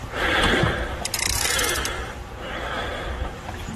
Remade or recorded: remade